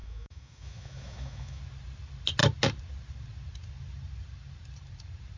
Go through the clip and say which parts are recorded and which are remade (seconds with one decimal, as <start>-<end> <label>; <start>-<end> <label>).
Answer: 0.0-1.6 remade; 1.6-5.4 recorded